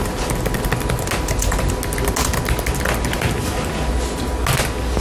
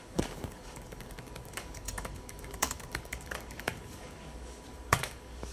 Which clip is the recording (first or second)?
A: first